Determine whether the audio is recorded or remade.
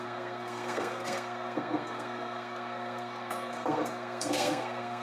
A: remade